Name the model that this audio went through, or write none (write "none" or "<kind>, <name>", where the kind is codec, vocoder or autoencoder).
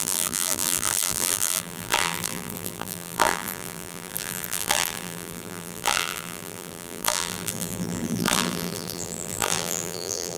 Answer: vocoder, BigVGAN v2